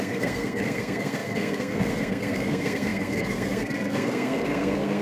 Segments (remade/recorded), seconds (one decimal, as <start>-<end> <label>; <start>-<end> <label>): 0.0-5.0 remade